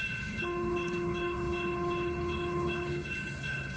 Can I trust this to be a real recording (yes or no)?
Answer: no